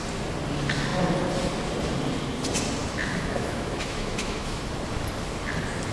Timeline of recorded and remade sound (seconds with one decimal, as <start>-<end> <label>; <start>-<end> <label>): 0.0-2.8 recorded; 2.8-4.6 remade; 4.6-5.9 recorded